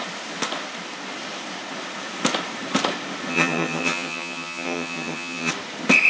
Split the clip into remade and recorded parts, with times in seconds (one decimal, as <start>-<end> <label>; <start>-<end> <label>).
0.0-3.3 recorded; 3.3-5.5 remade; 5.5-6.1 recorded

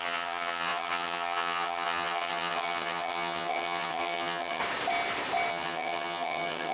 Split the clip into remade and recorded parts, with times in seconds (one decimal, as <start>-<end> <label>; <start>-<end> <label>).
0.0-4.6 remade; 4.6-5.5 recorded; 5.5-6.7 remade

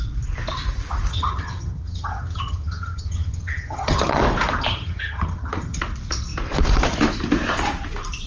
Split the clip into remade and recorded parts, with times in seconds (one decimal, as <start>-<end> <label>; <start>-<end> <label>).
0.0-1.1 recorded; 1.1-4.2 remade; 4.2-4.7 recorded; 4.7-5.8 remade; 5.8-8.3 recorded

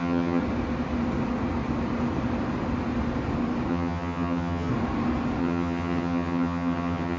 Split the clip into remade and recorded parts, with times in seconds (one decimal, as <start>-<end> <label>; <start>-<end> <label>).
0.0-0.4 remade; 0.4-3.7 recorded; 3.7-4.7 remade; 4.7-5.4 recorded; 5.4-7.2 remade

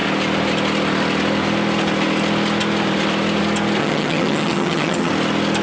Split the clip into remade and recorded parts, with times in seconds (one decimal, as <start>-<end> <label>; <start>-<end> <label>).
0.0-3.8 recorded; 3.8-5.1 remade; 5.1-5.6 recorded